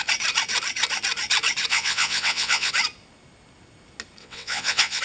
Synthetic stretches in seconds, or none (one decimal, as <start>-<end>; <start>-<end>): 1.7-2.7; 4.2-5.0